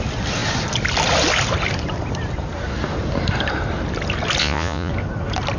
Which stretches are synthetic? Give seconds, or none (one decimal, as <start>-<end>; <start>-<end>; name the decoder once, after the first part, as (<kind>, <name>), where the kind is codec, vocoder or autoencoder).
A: 4.4-4.9 (vocoder, Vocos)